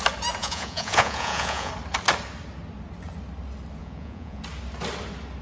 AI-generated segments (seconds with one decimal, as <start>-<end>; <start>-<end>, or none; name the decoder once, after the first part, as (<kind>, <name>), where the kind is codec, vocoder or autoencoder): 0.4-1.7 (vocoder, Vocos); 3.8-4.4